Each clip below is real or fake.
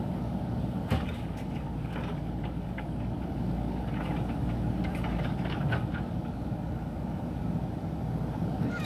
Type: fake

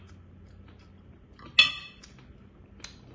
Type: real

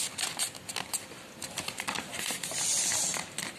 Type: real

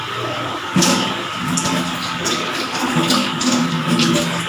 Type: fake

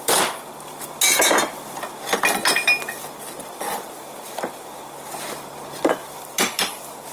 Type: real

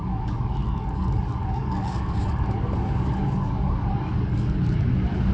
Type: fake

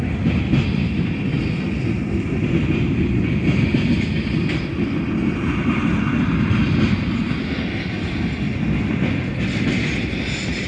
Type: real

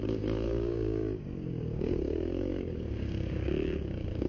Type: fake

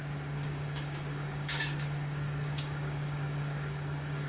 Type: fake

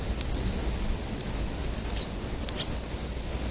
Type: real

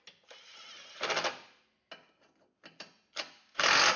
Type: real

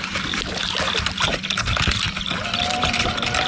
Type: real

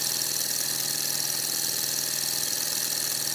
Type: real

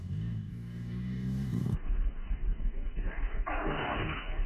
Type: fake